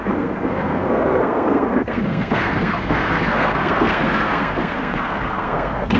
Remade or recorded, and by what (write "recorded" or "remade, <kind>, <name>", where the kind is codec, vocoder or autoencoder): remade, codec, SNAC